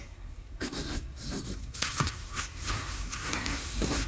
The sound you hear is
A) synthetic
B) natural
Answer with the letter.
A